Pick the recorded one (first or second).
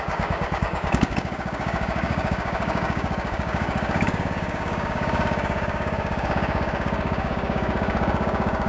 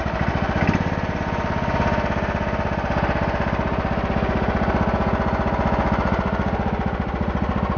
second